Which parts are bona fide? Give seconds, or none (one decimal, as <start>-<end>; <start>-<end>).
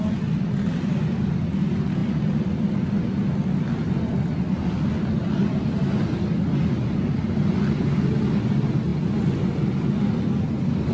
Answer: 0.0-10.9